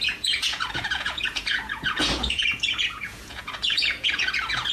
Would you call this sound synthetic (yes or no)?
yes